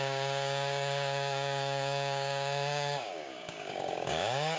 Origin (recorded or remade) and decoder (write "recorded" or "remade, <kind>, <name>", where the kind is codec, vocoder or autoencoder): remade, codec, DAC